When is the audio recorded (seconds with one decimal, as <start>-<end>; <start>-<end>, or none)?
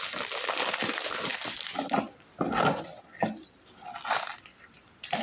0.0-5.2